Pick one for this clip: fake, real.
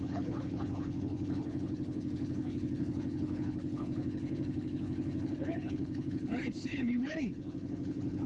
fake